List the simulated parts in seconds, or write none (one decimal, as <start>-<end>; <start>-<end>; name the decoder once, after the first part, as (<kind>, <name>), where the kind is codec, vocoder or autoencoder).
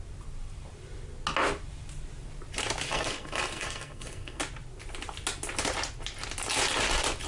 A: 2.9-4.4 (codec, SNAC)